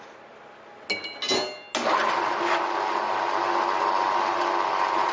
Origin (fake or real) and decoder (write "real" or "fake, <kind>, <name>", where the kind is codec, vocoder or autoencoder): real